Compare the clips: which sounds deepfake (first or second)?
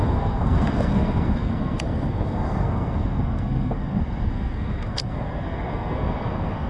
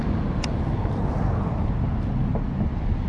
first